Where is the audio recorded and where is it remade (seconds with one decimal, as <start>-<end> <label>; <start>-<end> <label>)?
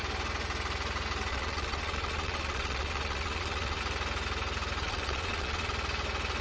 0.0-1.3 recorded; 1.3-3.8 remade; 3.8-4.8 recorded; 4.8-5.7 remade; 5.7-6.4 recorded